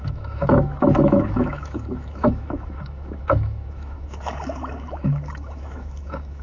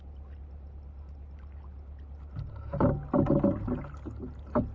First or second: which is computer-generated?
first